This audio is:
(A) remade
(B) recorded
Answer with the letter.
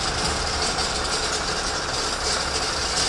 B